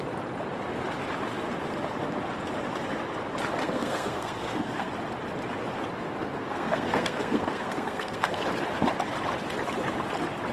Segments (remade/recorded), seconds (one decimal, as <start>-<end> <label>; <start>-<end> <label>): 0.0-3.6 recorded; 3.6-4.9 remade; 4.9-6.4 recorded; 6.4-8.4 remade; 8.4-10.5 recorded